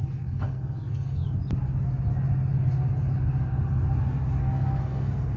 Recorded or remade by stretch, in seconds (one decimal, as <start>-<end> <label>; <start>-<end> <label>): 0.0-1.2 remade; 1.2-4.4 recorded; 4.4-5.4 remade